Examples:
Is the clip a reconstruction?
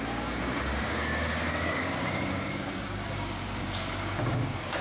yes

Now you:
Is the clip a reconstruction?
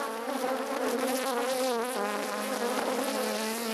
no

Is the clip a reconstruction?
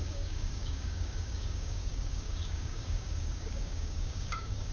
yes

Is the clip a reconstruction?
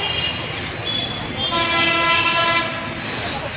no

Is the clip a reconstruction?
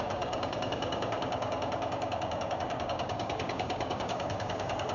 yes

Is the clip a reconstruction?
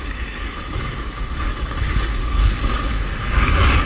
yes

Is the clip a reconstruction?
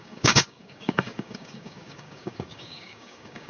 yes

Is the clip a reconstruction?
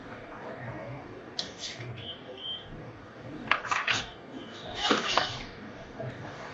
yes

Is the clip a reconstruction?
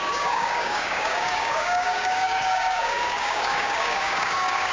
yes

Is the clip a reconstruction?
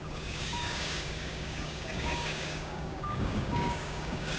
yes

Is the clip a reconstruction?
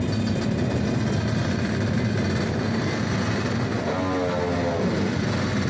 no